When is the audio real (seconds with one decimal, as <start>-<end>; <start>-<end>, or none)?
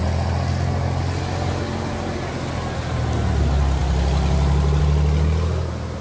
0.0-6.0